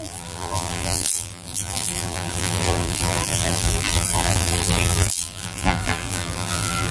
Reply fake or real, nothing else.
fake